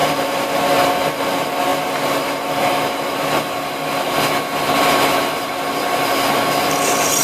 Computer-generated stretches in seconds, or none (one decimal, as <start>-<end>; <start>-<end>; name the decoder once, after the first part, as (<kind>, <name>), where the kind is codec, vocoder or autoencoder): 0.0-0.6 (vocoder, BigVGAN v2); 1.7-2.4